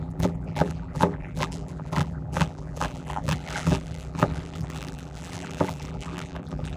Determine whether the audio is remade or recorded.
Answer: remade